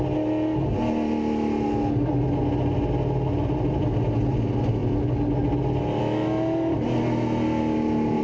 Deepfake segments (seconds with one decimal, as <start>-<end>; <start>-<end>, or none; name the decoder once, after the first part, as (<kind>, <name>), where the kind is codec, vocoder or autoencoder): none